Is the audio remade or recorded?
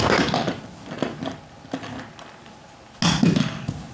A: recorded